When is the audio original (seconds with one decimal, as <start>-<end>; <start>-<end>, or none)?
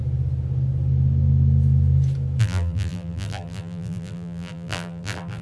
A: 0.0-2.4